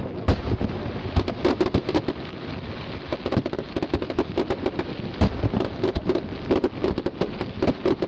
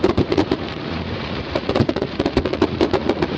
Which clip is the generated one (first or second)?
second